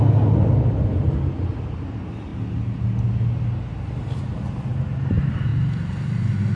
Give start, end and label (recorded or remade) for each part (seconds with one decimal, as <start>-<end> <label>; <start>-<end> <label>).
0.0-6.6 recorded